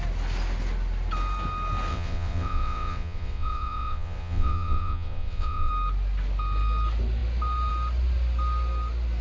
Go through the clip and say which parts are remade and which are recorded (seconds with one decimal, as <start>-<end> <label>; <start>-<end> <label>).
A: 0.0-1.9 recorded; 1.9-5.7 remade; 5.7-9.2 recorded

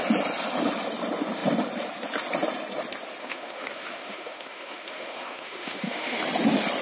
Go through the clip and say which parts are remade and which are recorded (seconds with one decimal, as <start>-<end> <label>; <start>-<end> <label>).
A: 0.0-3.2 recorded; 3.2-6.2 remade; 6.2-6.8 recorded

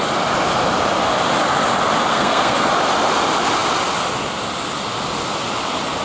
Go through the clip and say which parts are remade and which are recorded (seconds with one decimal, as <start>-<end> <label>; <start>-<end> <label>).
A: 0.0-2.1 recorded; 2.1-2.7 remade; 2.7-6.0 recorded